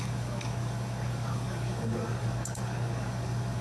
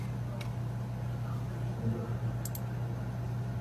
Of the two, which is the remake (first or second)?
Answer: first